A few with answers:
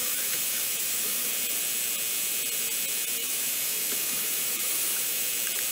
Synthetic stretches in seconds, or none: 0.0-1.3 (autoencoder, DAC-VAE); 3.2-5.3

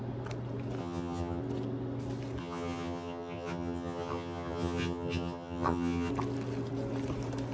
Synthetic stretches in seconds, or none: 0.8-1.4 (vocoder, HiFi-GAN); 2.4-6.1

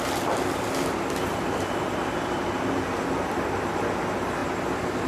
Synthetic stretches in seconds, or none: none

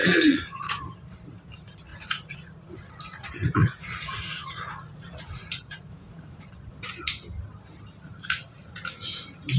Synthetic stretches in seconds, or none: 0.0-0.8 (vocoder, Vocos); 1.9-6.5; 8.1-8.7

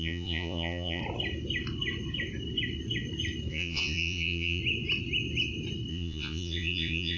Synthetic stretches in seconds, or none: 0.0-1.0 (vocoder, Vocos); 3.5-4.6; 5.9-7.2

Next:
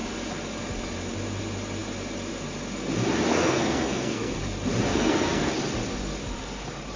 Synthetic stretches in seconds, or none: 3.3-4.4 (codec, SNAC); 4.9-5.5

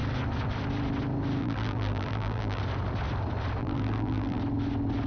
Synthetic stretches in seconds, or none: 1.4-2.6 (vocoder, BigVGAN v2); 3.6-4.4